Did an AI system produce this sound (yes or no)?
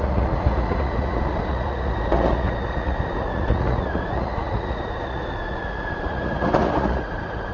yes